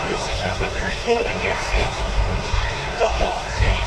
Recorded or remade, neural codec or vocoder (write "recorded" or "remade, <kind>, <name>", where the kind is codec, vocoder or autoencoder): remade, codec, SNAC